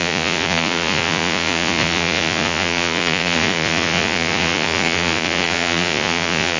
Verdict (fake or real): fake